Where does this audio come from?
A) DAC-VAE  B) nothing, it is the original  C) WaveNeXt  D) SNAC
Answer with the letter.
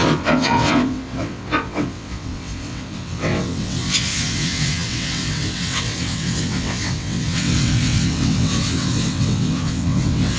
C